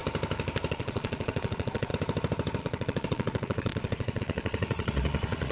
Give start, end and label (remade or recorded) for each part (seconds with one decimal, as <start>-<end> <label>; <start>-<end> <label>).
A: 0.0-0.7 recorded; 0.7-1.9 remade; 1.9-2.6 recorded; 2.6-5.5 remade